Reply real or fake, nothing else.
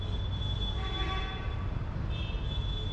real